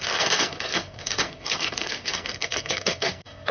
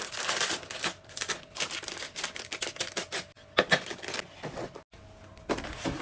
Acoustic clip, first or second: second